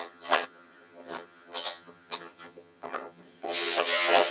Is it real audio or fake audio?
fake